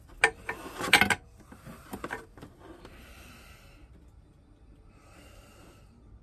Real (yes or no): yes